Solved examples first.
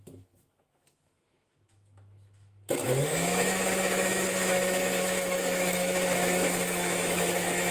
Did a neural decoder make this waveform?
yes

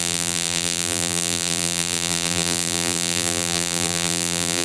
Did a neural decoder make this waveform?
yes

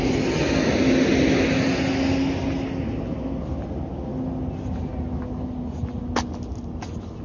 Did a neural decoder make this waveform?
no